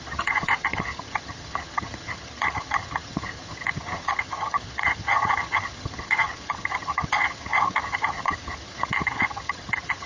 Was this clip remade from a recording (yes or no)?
yes